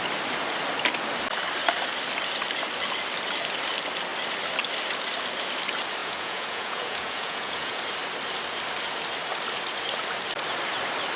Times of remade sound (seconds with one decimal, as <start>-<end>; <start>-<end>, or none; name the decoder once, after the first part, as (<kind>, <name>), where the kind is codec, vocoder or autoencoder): 6.0-7.8 (vocoder, Vocos)